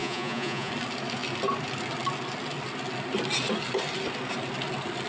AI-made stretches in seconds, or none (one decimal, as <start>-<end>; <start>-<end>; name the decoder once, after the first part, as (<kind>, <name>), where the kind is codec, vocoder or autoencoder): 0.0-0.7 (vocoder, Vocos)